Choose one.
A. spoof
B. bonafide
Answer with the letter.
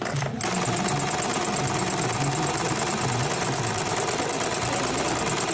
B